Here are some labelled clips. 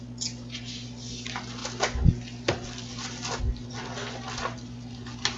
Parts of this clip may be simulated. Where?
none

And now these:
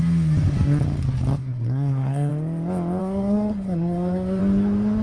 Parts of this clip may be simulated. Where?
1.4-2.3 (codec, SNAC); 3.0-4.4

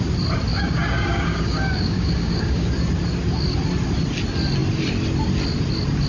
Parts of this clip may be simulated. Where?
0.5-2.7 (codec, DAC)